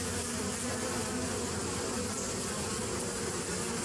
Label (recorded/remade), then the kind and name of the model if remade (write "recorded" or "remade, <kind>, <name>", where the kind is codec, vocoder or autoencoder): recorded